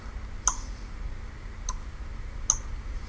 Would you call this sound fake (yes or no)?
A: no